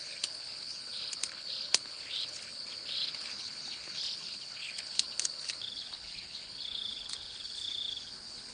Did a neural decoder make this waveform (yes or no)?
yes